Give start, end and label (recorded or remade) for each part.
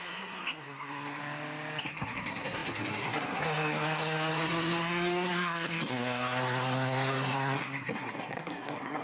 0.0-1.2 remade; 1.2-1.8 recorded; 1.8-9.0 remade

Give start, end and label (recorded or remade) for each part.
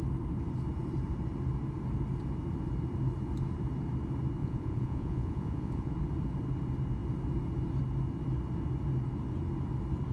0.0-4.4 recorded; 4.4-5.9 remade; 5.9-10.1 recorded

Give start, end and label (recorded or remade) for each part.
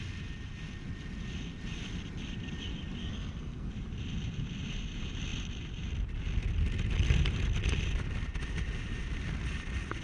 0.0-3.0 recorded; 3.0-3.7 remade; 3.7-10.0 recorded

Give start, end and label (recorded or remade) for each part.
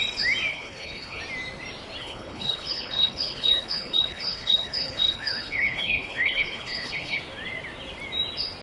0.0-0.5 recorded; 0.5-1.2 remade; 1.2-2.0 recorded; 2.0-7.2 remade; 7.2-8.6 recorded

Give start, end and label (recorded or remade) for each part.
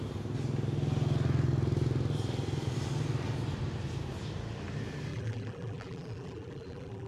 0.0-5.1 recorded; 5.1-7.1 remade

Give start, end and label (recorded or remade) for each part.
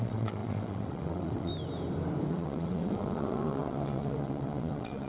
0.0-1.5 remade; 1.5-2.3 recorded; 2.3-5.1 remade